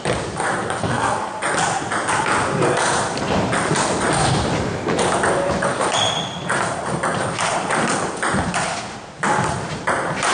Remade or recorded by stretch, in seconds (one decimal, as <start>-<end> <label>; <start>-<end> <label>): 0.0-0.8 recorded; 0.8-1.3 remade; 1.3-10.3 recorded